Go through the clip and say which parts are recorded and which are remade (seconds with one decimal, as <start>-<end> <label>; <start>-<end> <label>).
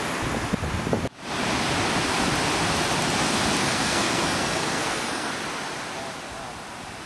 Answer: 0.0-3.6 recorded; 3.6-5.3 remade; 5.3-7.1 recorded